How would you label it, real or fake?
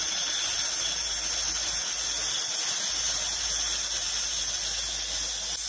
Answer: real